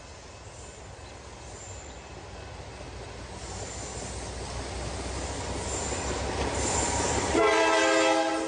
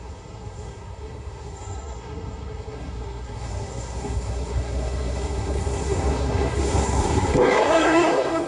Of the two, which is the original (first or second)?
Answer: first